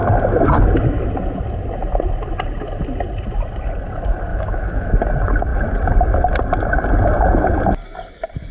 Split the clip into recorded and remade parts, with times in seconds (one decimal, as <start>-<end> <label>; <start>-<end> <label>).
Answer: 0.0-4.3 recorded; 4.3-4.9 remade; 4.9-8.5 recorded

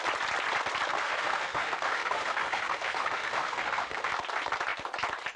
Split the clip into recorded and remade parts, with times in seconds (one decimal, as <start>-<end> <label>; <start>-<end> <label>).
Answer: 0.0-0.9 recorded; 0.9-4.1 remade; 4.1-5.4 recorded

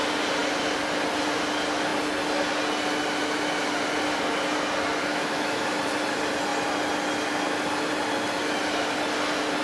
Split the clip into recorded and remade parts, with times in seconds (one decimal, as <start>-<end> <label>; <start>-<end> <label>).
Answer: 0.0-5.1 recorded; 5.1-5.7 remade; 5.7-9.6 recorded

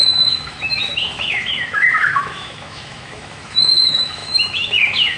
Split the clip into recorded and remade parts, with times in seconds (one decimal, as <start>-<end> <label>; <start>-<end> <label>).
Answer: 0.0-5.2 remade

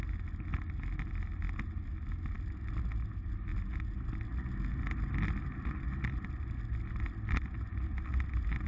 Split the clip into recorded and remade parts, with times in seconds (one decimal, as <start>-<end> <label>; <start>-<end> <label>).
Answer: 0.0-8.7 recorded

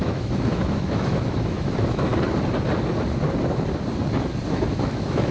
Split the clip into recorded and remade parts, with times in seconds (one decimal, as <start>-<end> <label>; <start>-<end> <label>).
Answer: 0.0-2.1 remade; 2.1-4.5 recorded; 4.5-5.3 remade